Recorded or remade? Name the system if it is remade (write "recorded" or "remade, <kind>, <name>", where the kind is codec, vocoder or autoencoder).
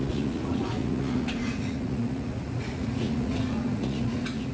remade, vocoder, Vocos